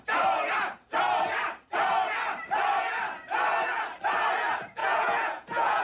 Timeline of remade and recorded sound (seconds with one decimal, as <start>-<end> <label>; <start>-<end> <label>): 0.0-4.8 recorded; 4.8-5.8 remade